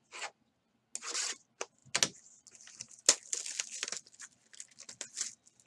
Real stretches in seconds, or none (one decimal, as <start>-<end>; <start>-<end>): 0.0-5.7